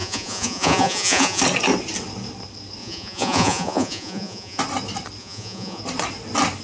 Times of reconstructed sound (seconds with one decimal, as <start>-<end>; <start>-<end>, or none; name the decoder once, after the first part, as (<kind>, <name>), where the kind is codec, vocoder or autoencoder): 0.0-1.4 (vocoder, Vocos); 2.8-4.6; 5.2-5.8